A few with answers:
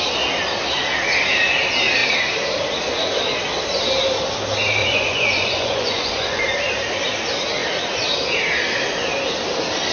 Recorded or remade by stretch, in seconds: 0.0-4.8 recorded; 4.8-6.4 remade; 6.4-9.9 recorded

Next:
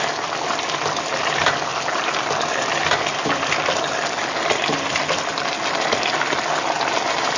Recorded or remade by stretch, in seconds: 0.0-7.4 recorded

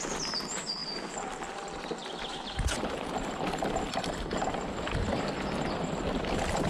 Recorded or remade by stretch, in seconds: 0.0-6.7 recorded